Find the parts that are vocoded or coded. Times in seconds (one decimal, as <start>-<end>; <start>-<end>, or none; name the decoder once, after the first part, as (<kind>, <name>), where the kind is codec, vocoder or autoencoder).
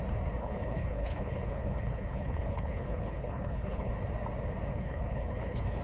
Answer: 0.4-3.9 (codec, HILCodec); 4.7-5.8